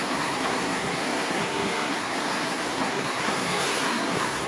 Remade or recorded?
remade